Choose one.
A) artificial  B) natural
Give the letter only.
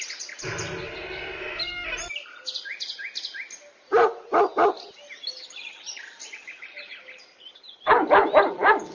B